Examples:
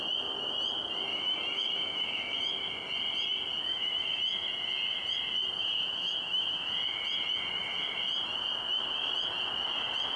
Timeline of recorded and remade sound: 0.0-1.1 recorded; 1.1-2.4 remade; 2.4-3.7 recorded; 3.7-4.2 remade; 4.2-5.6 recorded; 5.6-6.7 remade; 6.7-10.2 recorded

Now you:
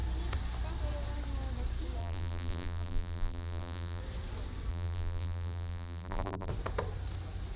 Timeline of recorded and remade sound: 0.0-2.0 recorded; 2.0-4.0 remade; 4.0-4.7 recorded; 4.7-6.5 remade; 6.5-7.6 recorded

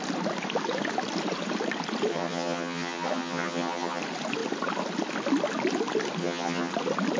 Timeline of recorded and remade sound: 0.0-2.1 recorded; 2.1-4.0 remade; 4.0-6.2 recorded; 6.2-6.7 remade; 6.7-7.2 recorded

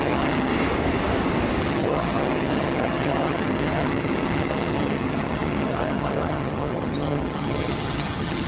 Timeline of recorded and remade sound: 0.0-0.5 remade; 0.5-1.6 recorded; 1.6-8.5 remade

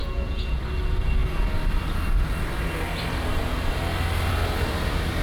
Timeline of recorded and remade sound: 0.0-0.6 remade; 0.6-5.2 recorded

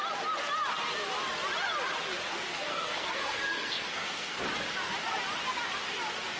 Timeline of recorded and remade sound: 0.0-2.7 recorded; 2.7-4.4 remade; 4.4-6.4 recorded